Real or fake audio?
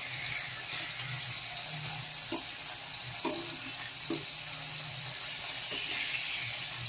real